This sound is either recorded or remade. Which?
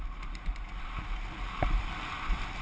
recorded